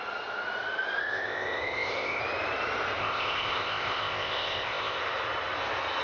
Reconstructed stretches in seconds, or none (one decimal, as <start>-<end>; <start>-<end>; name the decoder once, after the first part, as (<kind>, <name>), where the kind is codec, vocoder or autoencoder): 1.0-2.2 (codec, ZipCodec); 3.0-5.0